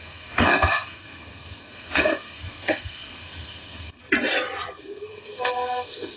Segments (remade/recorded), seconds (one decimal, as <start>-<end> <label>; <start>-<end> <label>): 0.0-4.0 remade; 4.0-4.7 recorded; 4.7-6.2 remade